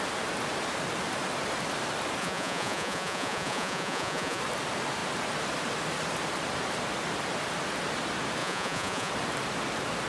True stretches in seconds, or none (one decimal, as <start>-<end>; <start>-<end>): 0.0-2.2; 4.4-8.4; 9.1-10.1